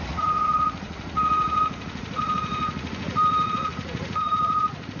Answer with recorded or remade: remade